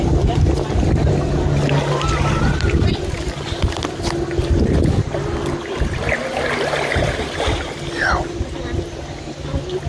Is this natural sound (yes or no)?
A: yes